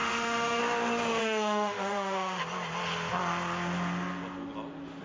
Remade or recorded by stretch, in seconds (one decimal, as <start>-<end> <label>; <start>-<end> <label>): 0.0-0.6 remade; 0.6-1.2 recorded; 1.2-2.4 remade; 2.4-5.0 recorded